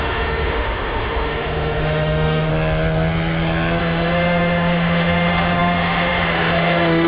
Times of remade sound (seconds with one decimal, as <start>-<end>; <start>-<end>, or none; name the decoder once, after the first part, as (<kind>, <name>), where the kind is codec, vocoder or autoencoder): 0.0-2.5 (autoencoder, DAC-VAE); 3.8-7.1